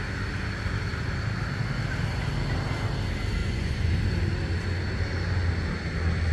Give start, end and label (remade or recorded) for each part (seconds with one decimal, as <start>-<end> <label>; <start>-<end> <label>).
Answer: 0.0-3.4 recorded; 3.4-3.9 remade; 3.9-6.3 recorded